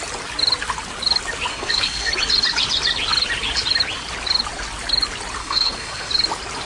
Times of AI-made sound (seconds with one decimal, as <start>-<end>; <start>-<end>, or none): 1.5-2.1; 5.4-6.1